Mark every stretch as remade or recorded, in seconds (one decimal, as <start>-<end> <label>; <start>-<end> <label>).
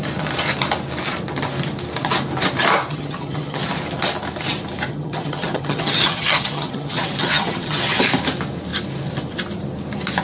0.0-2.9 recorded; 2.9-3.6 remade; 3.6-4.9 recorded; 4.9-8.0 remade; 8.0-10.2 recorded